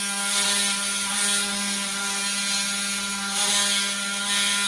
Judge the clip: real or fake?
real